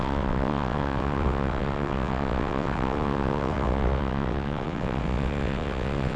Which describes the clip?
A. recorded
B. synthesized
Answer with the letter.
B